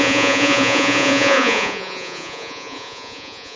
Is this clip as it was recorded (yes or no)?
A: no